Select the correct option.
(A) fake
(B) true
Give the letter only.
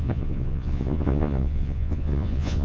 A